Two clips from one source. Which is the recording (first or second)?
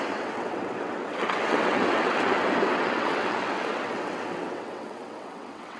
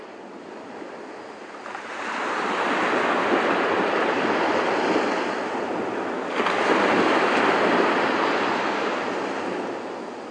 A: second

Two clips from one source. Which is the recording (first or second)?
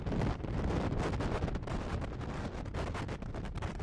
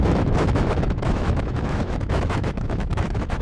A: first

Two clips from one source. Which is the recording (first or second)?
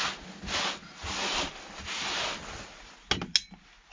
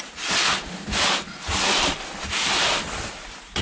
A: first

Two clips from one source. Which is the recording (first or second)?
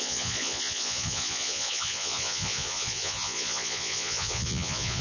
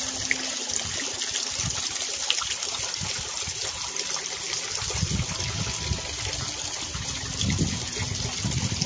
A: second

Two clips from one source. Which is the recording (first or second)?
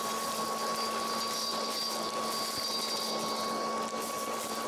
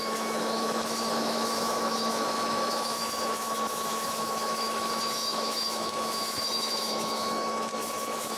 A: first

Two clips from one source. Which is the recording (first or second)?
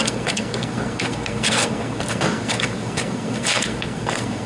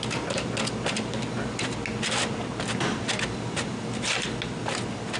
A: second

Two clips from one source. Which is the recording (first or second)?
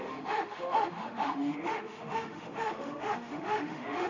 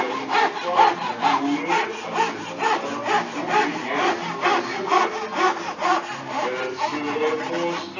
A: second